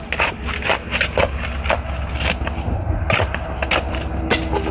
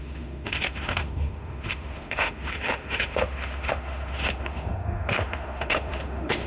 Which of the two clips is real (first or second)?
first